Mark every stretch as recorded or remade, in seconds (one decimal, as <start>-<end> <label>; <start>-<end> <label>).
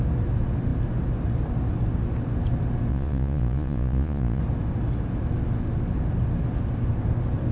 0.0-2.9 recorded; 2.9-4.4 remade; 4.4-7.5 recorded